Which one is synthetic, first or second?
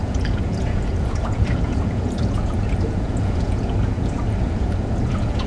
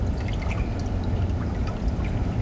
first